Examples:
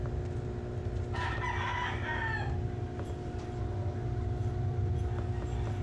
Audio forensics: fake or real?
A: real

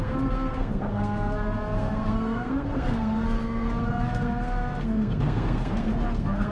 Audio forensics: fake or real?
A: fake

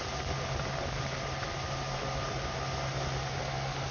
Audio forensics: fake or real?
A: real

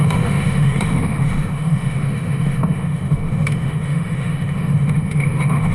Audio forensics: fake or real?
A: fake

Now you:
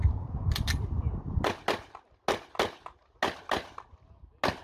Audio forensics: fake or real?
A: real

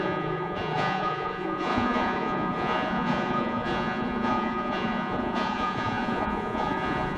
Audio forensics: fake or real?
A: fake